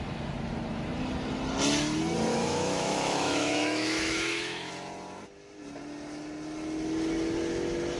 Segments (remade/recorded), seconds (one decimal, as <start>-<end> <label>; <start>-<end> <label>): 0.0-2.3 recorded; 2.3-4.7 remade; 4.7-8.0 recorded